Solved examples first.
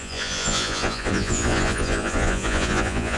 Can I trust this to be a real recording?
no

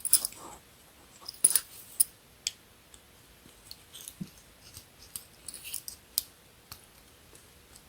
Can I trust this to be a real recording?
yes